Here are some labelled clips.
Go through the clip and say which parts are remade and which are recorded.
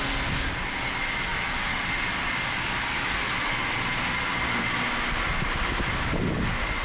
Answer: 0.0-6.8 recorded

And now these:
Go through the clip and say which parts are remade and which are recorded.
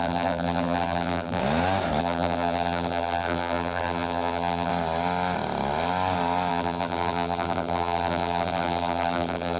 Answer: 0.0-1.4 remade; 1.4-2.0 recorded; 2.0-4.7 remade; 4.7-6.5 recorded; 6.5-9.6 remade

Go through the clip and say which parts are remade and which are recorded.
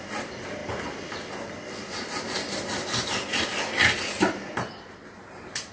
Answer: 0.0-5.7 recorded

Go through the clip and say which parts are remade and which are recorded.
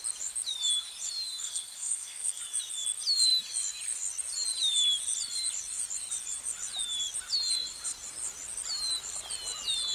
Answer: 0.0-1.4 recorded; 1.4-2.4 remade; 2.4-9.9 recorded